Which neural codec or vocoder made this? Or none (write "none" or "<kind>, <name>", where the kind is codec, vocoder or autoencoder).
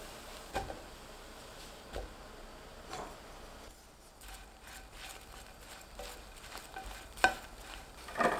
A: none